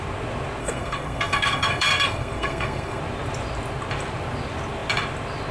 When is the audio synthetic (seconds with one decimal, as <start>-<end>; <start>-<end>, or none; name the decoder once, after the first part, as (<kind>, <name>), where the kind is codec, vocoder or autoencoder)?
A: 0.6-3.0 (codec, SNAC)